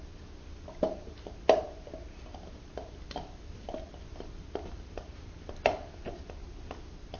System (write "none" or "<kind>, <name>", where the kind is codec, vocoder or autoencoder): vocoder, BigVGAN v2